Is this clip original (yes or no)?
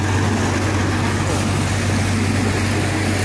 yes